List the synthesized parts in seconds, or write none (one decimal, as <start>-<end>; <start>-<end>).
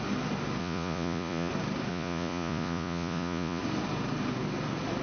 0.6-1.5; 1.9-3.6